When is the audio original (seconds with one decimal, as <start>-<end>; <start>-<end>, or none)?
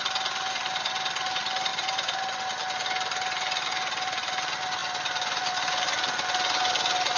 0.0-7.2